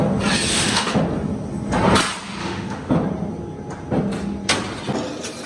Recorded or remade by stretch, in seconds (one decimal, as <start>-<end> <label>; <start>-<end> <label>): 0.0-0.5 recorded; 0.5-1.0 remade; 1.0-2.4 recorded; 2.4-2.9 remade; 2.9-5.5 recorded